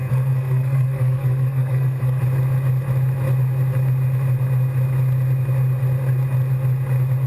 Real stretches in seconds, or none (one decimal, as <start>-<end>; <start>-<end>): 2.2-7.3